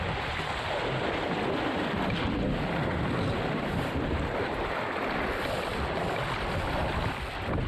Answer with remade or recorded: recorded